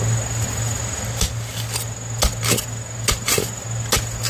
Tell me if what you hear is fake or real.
real